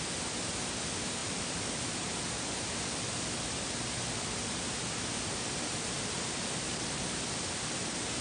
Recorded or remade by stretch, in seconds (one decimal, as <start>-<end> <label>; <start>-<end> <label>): 0.0-1.2 recorded; 1.2-2.1 remade; 2.1-6.0 recorded; 6.0-7.0 remade; 7.0-8.2 recorded